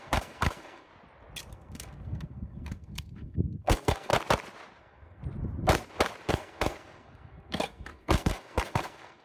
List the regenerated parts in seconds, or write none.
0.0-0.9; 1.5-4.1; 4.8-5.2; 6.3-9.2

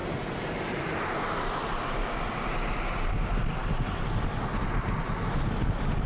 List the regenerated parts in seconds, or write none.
none